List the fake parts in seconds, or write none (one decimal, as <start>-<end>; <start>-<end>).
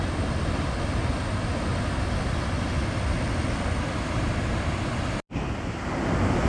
none